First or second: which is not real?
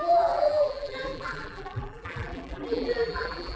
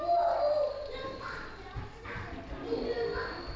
first